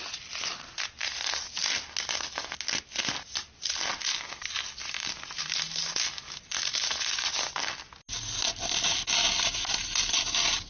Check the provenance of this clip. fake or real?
real